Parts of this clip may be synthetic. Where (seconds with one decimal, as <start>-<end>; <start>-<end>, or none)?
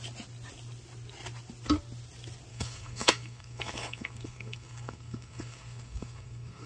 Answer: 2.5-6.7